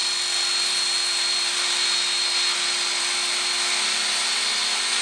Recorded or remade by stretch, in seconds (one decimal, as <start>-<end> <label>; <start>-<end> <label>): 0.0-5.0 recorded